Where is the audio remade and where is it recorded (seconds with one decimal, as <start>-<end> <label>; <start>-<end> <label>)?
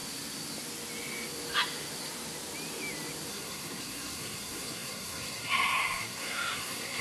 0.0-3.3 recorded; 3.3-7.0 remade